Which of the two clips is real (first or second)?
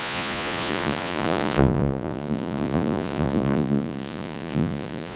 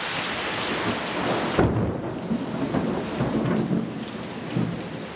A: second